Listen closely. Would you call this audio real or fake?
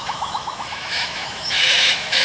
fake